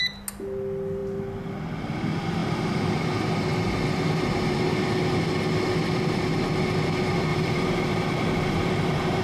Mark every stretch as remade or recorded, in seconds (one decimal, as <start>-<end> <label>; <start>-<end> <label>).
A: 0.0-7.3 recorded; 7.3-9.2 remade